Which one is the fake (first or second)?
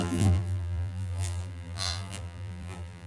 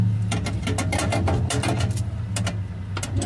first